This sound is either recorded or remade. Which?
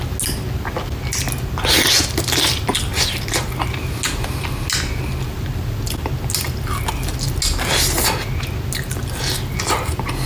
recorded